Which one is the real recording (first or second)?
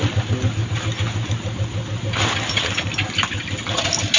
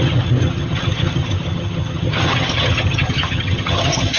first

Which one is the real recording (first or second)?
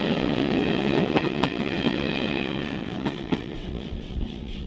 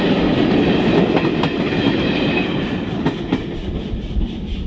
second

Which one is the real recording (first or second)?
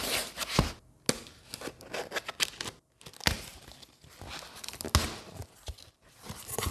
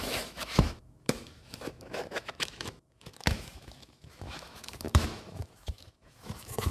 first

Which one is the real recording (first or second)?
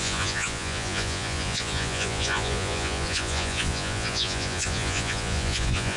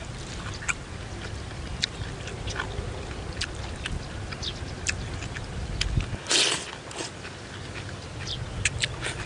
second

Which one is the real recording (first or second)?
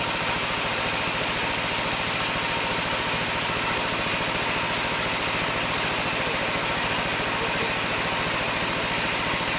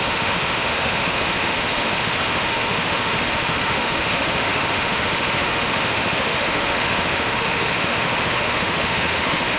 first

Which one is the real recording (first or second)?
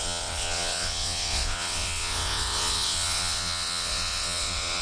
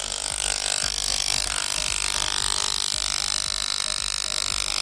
second